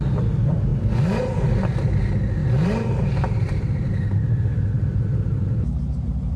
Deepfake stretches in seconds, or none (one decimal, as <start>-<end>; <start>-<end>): 2.4-6.4

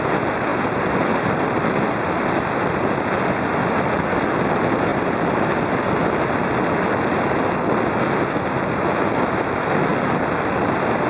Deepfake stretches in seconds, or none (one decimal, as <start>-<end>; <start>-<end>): 0.5-2.9; 4.9-5.5

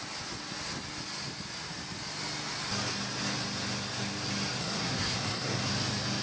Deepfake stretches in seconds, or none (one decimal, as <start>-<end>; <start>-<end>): 4.6-5.7

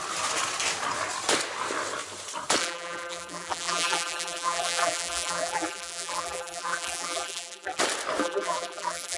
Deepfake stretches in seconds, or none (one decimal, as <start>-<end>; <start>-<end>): 2.6-7.8; 8.2-9.2

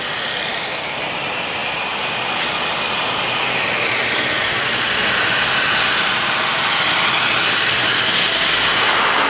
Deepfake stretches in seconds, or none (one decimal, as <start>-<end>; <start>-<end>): none

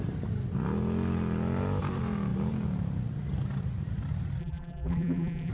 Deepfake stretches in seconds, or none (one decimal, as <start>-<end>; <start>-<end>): 4.4-5.5

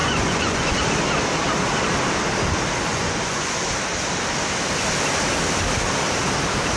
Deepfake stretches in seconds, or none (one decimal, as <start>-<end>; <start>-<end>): 0.0-0.8; 2.9-3.5

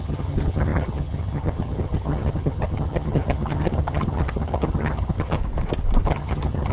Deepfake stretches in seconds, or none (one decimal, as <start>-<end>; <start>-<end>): 0.0-5.4; 6.1-6.7